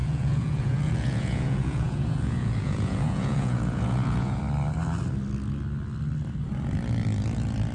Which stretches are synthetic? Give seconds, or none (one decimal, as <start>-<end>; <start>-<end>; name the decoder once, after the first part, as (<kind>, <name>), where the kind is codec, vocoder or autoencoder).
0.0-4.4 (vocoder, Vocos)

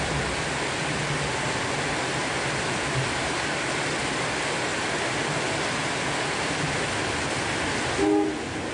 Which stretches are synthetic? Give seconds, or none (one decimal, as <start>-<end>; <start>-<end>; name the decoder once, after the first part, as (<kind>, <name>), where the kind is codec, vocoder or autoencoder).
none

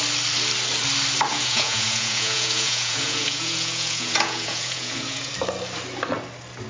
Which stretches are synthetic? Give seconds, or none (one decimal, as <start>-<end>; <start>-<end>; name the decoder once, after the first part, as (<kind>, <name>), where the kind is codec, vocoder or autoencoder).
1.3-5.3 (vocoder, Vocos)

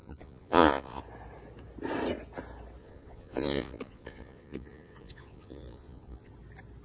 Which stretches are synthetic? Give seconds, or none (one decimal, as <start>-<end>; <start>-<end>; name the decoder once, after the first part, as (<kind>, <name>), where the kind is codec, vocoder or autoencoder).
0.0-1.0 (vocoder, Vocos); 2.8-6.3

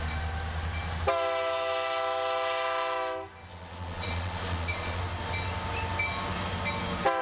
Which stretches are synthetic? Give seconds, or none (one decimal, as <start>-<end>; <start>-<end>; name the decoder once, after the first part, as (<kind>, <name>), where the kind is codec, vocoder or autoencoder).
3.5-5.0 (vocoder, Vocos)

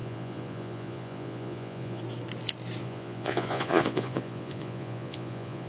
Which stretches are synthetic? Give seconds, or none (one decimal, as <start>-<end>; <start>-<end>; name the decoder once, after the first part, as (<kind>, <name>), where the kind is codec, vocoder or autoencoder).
0.0-2.0 (vocoder, Vocos); 2.8-5.7

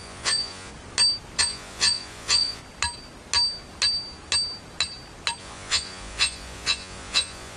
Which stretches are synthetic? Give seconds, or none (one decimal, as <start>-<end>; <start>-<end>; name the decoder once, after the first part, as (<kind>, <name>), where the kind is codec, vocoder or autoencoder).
0.0-0.7 (vocoder, Vocos); 1.4-2.6; 5.4-7.6

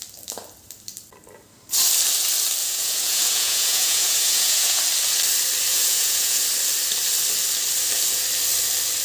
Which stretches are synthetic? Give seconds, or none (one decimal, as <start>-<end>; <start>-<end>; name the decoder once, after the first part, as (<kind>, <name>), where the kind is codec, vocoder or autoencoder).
2.6-4.8 (vocoder, Vocos); 5.7-6.4